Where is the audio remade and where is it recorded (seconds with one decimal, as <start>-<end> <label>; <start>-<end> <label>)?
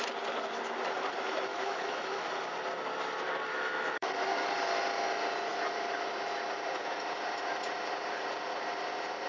0.0-1.5 recorded; 1.5-2.3 remade; 2.3-3.5 recorded; 3.5-4.1 remade; 4.1-9.3 recorded